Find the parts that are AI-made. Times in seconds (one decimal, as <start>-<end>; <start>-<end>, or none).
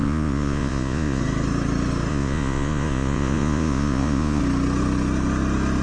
0.0-1.2; 2.1-4.4